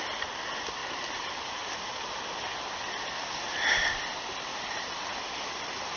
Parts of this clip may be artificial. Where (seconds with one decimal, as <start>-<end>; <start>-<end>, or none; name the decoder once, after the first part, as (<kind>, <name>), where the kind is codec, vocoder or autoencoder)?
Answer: 0.8-1.9 (vocoder, BigVGAN v2); 4.5-6.0